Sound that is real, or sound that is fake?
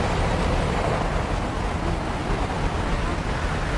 real